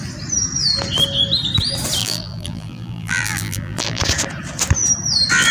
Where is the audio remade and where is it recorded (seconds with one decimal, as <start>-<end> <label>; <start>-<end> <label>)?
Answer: 0.0-2.0 recorded; 2.0-4.0 remade; 4.0-5.5 recorded